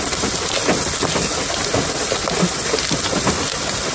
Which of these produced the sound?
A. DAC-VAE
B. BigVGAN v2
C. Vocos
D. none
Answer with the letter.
D